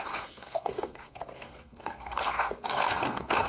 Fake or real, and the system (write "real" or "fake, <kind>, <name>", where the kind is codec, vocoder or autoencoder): fake, codec, SNAC